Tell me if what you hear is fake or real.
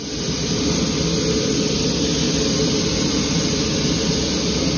real